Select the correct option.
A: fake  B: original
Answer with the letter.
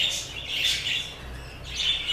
B